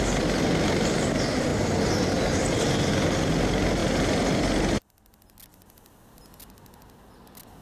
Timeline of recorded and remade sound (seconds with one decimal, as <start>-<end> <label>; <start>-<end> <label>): 0.0-7.6 recorded